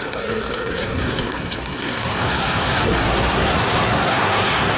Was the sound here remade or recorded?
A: remade